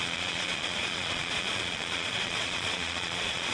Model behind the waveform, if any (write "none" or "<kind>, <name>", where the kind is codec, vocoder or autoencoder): vocoder, Vocos